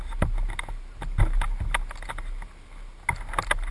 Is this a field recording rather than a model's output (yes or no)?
yes